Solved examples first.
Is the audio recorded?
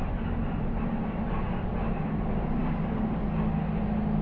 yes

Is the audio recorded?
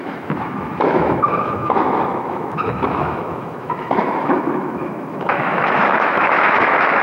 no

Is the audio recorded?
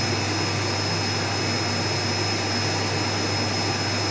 yes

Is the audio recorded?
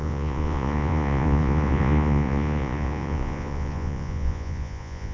no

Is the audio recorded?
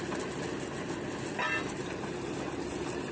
yes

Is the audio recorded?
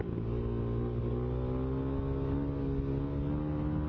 yes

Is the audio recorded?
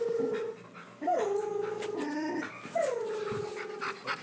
yes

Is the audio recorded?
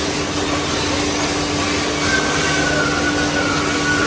yes